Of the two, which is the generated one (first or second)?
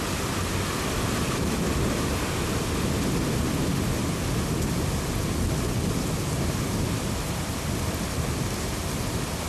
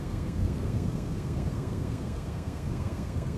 second